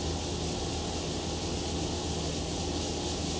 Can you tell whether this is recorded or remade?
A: recorded